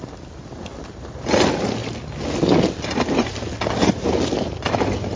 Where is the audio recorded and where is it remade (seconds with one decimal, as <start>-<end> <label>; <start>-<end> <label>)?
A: 0.0-5.2 recorded